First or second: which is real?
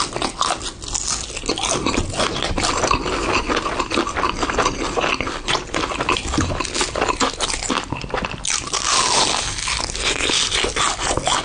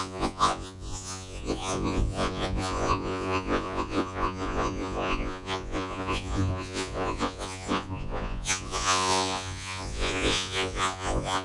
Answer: first